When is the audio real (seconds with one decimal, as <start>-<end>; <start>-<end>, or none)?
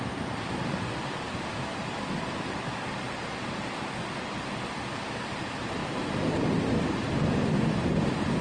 0.0-8.4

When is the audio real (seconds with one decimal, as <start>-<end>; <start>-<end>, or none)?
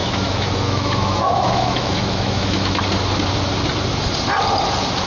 2.8-5.1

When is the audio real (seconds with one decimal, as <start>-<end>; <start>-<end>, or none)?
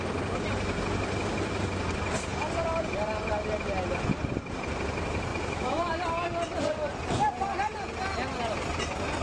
0.0-5.3; 5.9-9.2